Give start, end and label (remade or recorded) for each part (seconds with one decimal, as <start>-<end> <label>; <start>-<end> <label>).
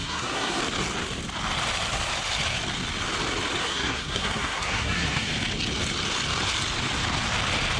0.0-0.6 remade; 0.6-3.6 recorded; 3.6-5.3 remade; 5.3-7.8 recorded